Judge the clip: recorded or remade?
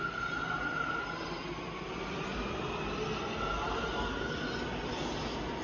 recorded